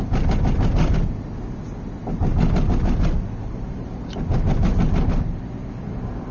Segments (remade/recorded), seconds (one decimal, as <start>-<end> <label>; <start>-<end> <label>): 0.0-6.3 recorded